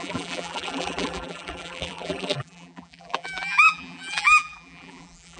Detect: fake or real fake